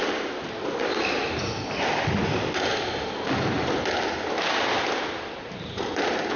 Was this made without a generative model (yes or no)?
yes